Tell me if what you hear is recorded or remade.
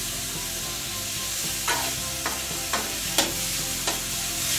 recorded